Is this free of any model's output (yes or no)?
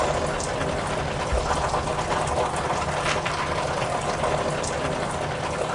no